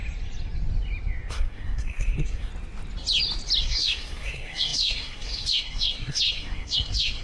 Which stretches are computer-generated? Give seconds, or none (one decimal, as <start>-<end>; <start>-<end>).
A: 1.3-2.5; 3.6-7.2